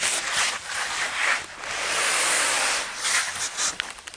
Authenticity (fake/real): real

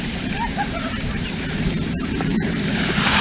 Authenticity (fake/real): fake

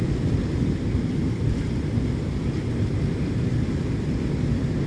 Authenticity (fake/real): fake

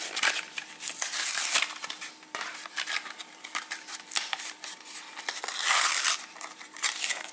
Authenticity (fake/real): fake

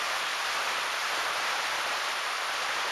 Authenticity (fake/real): real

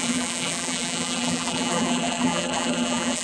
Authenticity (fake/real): fake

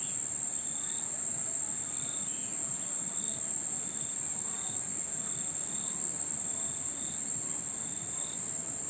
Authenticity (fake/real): real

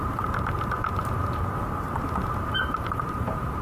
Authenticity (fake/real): fake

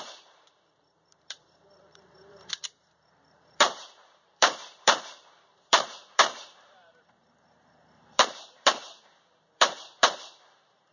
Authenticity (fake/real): fake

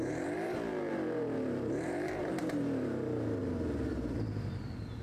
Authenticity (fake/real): fake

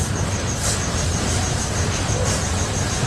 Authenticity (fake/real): fake